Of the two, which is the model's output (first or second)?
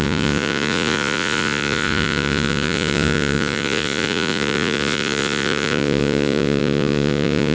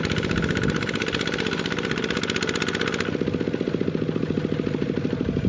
first